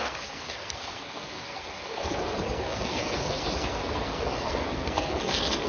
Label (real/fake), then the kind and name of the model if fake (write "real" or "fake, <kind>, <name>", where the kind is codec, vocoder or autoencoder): fake, codec, SNAC